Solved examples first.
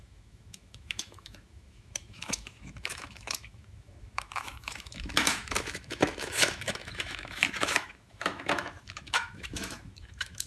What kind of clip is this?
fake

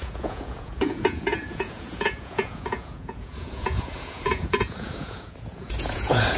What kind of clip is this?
fake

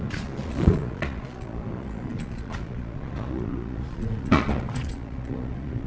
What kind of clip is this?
fake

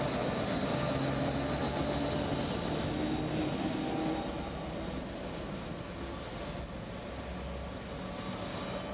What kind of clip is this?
real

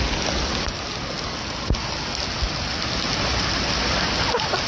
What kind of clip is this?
real